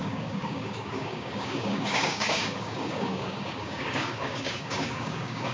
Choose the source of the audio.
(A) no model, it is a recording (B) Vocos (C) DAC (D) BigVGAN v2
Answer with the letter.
C